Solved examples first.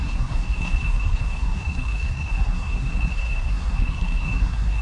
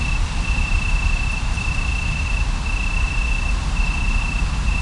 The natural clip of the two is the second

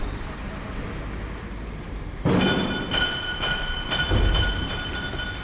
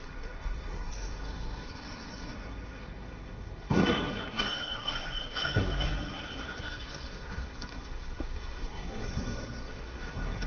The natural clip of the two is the first